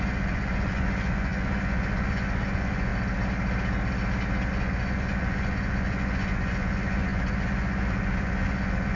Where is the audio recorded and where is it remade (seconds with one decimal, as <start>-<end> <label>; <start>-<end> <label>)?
0.0-2.9 remade; 2.9-4.5 recorded; 4.5-9.0 remade